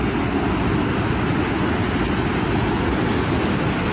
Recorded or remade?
recorded